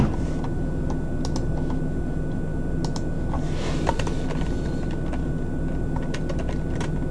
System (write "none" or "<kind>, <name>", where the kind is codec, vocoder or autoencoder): none